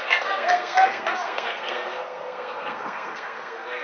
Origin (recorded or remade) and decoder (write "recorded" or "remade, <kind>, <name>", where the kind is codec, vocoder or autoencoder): remade, codec, SNAC